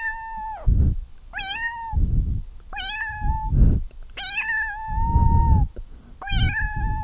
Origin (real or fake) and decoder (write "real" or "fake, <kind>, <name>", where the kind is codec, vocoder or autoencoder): real